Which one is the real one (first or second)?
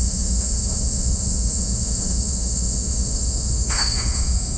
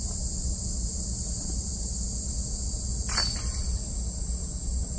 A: second